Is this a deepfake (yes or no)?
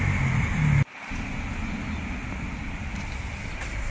no